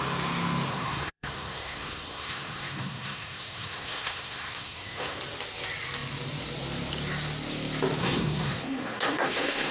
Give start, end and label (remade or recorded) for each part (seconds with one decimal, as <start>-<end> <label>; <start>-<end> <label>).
0.0-0.7 recorded; 0.7-5.2 remade; 5.2-8.0 recorded; 8.0-9.7 remade